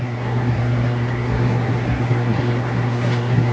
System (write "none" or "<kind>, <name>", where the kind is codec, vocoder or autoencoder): codec, SNAC